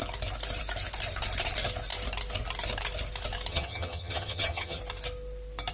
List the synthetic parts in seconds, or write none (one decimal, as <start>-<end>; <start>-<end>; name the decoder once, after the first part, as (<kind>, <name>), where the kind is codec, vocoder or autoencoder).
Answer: 3.5-4.8 (vocoder, HiFi-GAN)